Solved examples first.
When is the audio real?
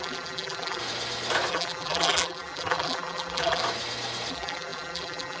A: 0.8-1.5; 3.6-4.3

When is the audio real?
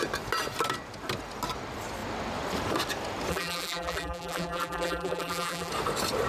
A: 0.0-3.3; 5.7-6.3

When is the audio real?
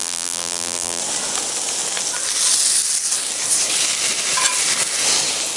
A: 1.0-5.6